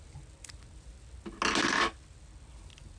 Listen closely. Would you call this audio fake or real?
real